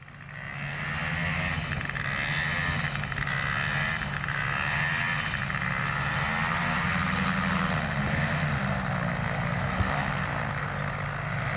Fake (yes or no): no